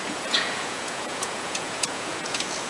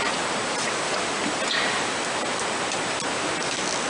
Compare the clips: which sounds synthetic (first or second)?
first